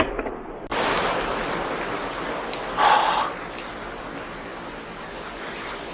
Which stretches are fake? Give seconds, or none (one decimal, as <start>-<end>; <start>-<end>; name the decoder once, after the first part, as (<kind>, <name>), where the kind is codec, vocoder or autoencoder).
none